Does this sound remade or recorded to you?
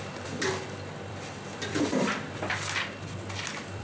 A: remade